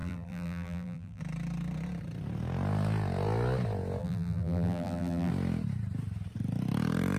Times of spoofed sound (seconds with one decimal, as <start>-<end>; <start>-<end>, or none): 0.0-1.2; 4.0-5.3